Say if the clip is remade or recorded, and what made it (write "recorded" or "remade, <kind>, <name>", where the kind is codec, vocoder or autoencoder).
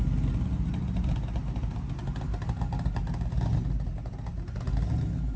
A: recorded